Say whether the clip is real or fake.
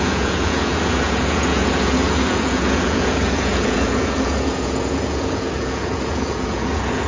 fake